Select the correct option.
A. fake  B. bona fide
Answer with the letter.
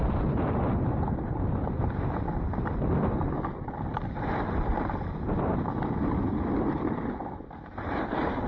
B